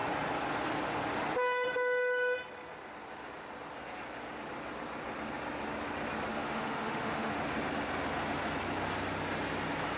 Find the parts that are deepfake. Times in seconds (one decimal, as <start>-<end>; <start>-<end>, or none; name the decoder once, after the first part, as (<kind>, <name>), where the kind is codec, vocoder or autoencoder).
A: 6.3-7.4 (autoencoder, DAC-VAE)